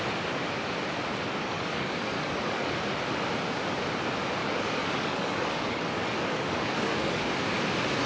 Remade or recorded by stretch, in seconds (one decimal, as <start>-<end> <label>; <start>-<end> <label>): 0.0-1.4 recorded; 1.4-2.8 remade; 2.8-4.4 recorded; 4.4-7.3 remade; 7.3-8.1 recorded